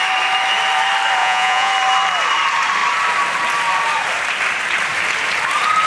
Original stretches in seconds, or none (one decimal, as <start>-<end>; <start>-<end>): 0.0-1.2; 1.7-5.9